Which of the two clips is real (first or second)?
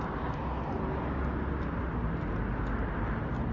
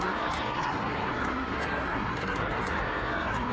first